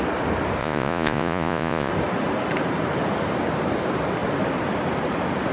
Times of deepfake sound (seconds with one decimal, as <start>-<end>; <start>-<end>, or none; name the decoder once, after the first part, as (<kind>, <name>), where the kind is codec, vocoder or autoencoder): 0.6-1.9 (vocoder, Vocos)